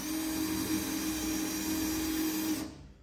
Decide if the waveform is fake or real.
real